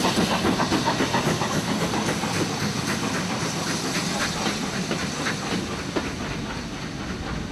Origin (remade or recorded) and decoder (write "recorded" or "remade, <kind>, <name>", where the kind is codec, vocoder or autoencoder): recorded